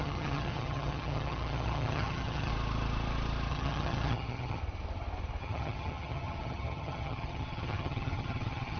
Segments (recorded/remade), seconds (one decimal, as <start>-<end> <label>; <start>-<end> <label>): 0.0-2.5 remade; 2.5-3.5 recorded; 3.5-4.6 remade; 4.6-5.4 recorded; 5.4-8.8 remade